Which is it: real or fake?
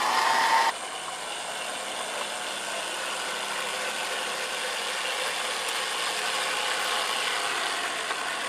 real